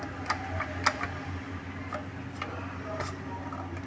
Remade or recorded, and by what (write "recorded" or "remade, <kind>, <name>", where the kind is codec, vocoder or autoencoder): recorded